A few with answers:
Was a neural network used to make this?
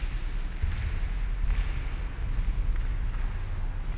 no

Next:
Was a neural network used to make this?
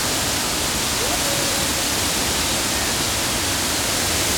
no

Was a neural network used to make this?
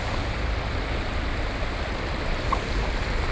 no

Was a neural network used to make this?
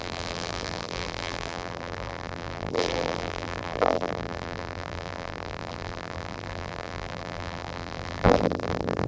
yes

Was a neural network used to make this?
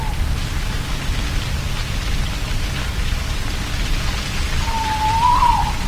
no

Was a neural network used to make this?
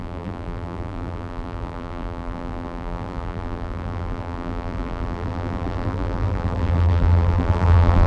yes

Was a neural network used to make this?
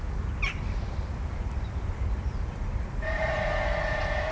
yes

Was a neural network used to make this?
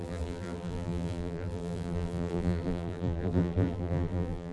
yes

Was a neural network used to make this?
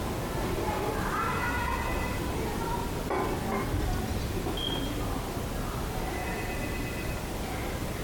no